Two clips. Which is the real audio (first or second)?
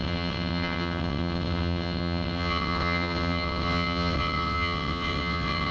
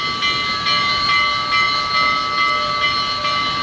second